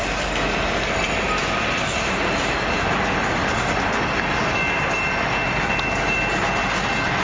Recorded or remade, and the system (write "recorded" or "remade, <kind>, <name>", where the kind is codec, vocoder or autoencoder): recorded